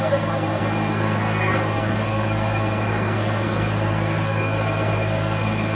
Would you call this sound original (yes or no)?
no